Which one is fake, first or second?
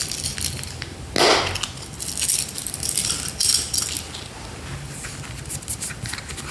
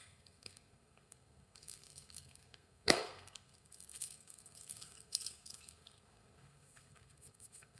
second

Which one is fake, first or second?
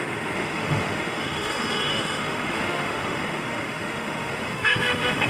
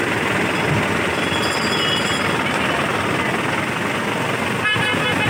first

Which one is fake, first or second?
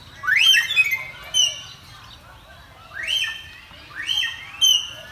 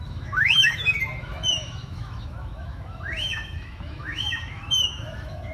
second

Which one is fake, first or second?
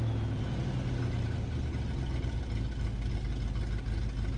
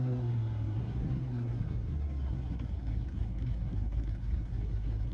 second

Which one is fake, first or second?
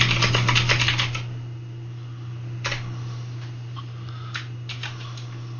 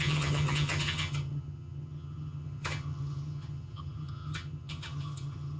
second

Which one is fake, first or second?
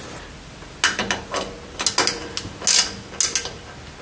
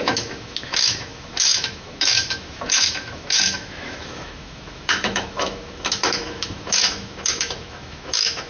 second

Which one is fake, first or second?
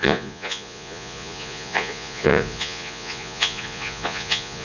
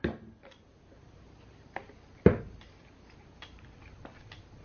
first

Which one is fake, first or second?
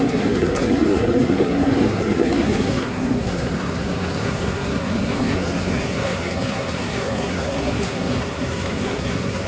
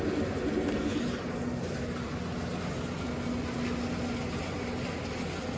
first